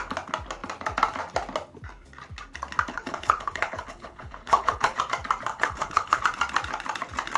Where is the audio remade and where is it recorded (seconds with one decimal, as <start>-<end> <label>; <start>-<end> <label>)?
0.0-2.9 recorded; 2.9-5.0 remade; 5.0-5.5 recorded; 5.5-6.2 remade; 6.2-7.4 recorded

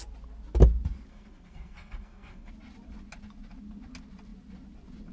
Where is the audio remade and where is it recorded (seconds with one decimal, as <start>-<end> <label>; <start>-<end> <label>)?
0.0-1.1 recorded; 1.1-2.5 remade; 2.5-5.1 recorded

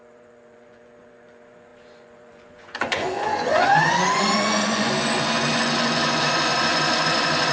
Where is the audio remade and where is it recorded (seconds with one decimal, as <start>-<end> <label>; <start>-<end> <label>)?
0.0-7.5 remade

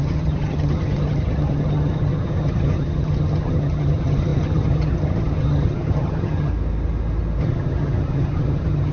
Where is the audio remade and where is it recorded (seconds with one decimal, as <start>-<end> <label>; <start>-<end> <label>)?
0.0-6.5 remade; 6.5-7.4 recorded; 7.4-8.9 remade

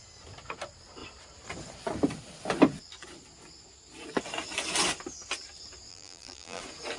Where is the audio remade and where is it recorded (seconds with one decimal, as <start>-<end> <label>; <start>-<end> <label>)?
0.0-5.9 recorded; 5.9-6.6 remade; 6.6-7.0 recorded